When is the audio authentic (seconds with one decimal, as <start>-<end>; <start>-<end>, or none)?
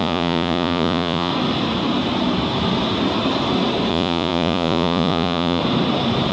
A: 1.3-3.9; 5.6-6.3